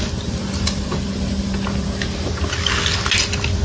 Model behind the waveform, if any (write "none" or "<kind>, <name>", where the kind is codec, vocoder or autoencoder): none